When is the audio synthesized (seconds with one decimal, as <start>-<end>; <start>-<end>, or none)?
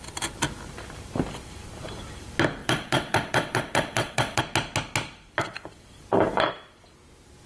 2.6-4.4